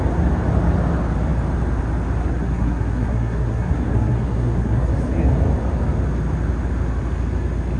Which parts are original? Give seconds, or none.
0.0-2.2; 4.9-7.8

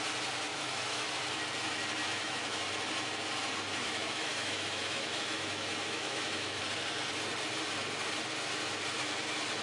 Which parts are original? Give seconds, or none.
0.0-0.5; 1.1-2.0; 2.6-3.8; 6.6-9.6

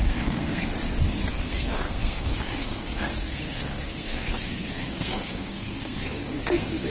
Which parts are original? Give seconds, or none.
0.7-1.3

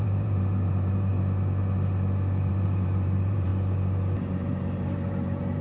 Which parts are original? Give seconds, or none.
1.1-2.5; 3.5-4.3

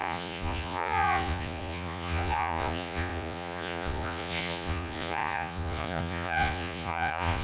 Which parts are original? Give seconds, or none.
none

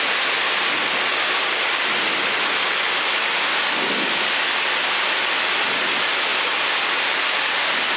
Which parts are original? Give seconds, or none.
0.0-1.1; 1.6-3.5; 4.3-8.0